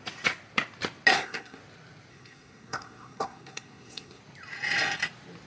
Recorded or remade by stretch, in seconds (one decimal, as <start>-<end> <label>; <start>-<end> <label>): 0.0-1.1 recorded; 1.1-1.6 remade; 1.6-2.1 recorded; 2.1-4.2 remade; 4.2-5.5 recorded